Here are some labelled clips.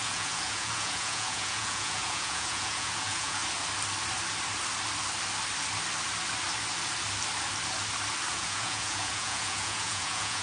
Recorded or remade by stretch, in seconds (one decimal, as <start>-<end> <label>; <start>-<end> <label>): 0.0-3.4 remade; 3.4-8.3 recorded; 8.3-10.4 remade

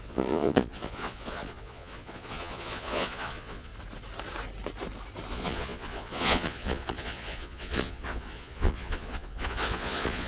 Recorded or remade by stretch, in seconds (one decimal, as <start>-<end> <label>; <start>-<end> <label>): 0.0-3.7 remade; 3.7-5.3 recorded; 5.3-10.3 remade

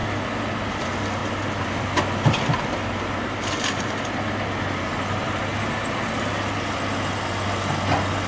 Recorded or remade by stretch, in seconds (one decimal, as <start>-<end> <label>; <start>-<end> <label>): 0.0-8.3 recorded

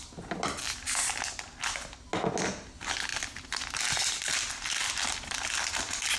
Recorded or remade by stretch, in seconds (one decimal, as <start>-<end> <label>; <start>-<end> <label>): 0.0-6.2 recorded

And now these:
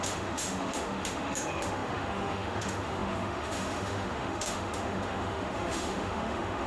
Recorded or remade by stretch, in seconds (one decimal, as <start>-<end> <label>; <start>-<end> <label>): 0.0-6.7 remade

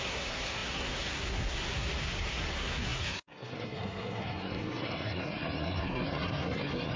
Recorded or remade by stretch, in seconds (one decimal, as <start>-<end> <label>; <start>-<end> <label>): 0.0-7.0 remade